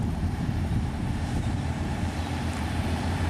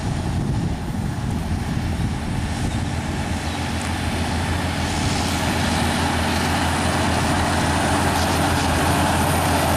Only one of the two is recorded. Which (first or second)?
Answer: second